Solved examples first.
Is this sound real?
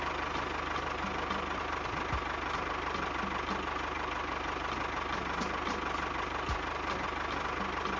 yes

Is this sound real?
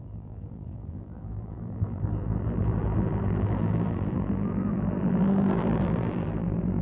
no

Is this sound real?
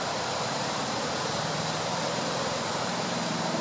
no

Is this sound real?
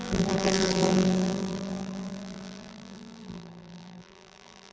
no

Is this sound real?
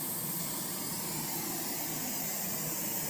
no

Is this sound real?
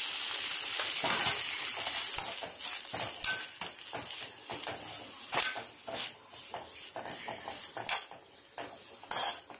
yes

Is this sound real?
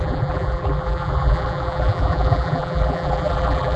no